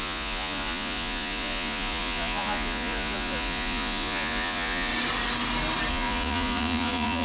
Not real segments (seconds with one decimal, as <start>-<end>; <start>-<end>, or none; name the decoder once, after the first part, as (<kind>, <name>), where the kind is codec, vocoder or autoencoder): 0.0-4.9 (vocoder, Vocos); 5.9-7.2